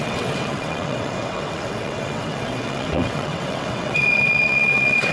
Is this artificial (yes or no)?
yes